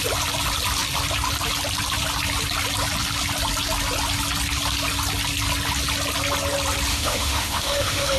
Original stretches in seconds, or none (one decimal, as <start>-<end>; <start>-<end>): 0.0-6.9

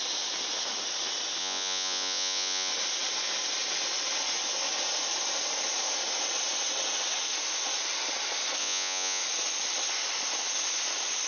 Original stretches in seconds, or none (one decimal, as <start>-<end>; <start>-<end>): 0.0-1.4; 2.7-8.6; 9.2-11.3

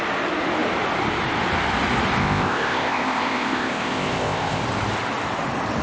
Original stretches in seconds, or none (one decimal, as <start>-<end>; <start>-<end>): 0.0-2.2; 4.6-5.8

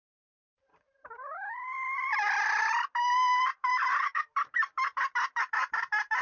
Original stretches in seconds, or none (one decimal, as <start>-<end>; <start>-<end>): 2.1-2.7

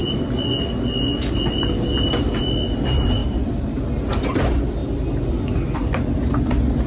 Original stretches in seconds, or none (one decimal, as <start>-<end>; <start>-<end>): 0.0-3.2; 3.8-6.9

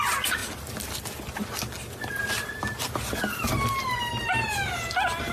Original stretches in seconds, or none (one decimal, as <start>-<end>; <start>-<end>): 0.0-5.3

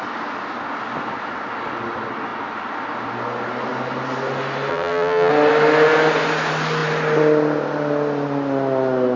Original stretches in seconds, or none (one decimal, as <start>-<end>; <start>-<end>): 0.0-4.7; 5.3-9.2